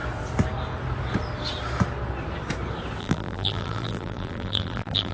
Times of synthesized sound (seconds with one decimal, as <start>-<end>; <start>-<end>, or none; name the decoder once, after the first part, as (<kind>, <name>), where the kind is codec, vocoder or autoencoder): 3.0-5.1 (vocoder, BigVGAN v2)